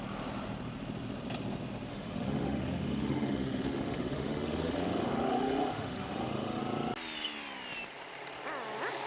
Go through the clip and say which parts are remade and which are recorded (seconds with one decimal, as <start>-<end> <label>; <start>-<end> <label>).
0.0-1.9 recorded; 1.9-6.6 remade; 6.6-9.1 recorded